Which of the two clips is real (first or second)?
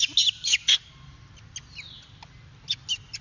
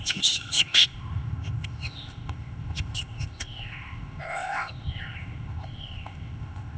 first